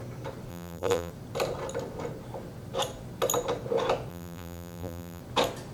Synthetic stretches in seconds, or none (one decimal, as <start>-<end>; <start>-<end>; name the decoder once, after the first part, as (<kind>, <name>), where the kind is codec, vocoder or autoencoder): 0.5-1.1 (vocoder, BigVGAN v2); 4.1-5.2